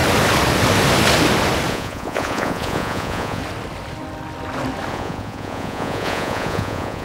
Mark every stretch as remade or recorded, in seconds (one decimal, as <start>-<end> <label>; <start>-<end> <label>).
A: 0.0-1.7 recorded; 1.7-3.4 remade; 3.4-4.9 recorded; 4.9-7.0 remade